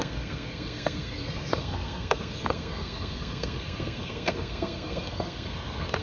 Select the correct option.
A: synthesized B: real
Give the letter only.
A